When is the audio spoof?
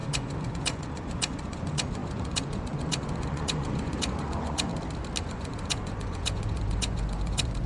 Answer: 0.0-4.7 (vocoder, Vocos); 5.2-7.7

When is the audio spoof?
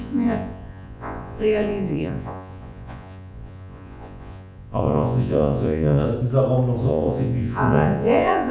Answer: 0.0-6.1 (vocoder, Vocos); 6.8-8.5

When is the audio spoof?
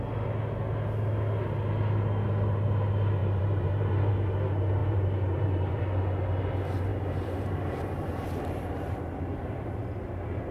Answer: 3.2-4.1 (vocoder, BigVGAN v2); 4.8-5.8; 6.9-9.8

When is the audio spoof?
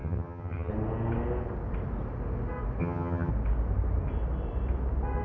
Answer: 0.0-0.7 (vocoder, HiFi-GAN); 2.8-3.3